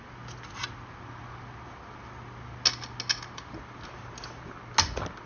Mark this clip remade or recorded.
recorded